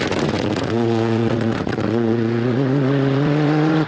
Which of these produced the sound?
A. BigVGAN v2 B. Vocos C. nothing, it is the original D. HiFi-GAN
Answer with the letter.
B